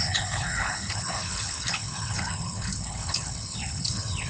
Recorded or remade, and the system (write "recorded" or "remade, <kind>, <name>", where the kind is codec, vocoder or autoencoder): remade, codec, HILCodec